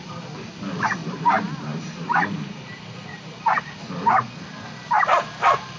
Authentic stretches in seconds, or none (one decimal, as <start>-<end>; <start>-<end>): 0.0-1.0; 3.8-5.8